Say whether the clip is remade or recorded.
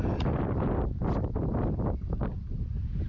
recorded